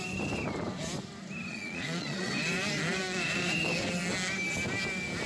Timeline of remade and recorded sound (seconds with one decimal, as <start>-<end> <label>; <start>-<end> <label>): 0.0-1.5 recorded; 1.5-2.3 remade; 2.3-5.3 recorded